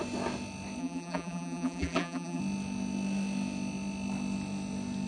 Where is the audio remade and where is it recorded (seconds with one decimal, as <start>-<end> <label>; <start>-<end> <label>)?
0.0-0.8 recorded; 0.8-2.4 remade; 2.4-5.1 recorded